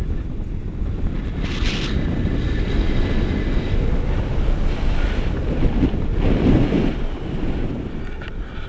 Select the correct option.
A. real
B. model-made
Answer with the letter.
A